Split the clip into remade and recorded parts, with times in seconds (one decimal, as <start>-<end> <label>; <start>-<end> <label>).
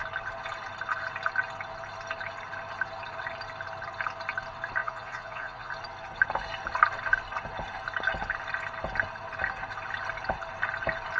0.0-4.8 recorded; 4.8-5.7 remade; 5.7-11.2 recorded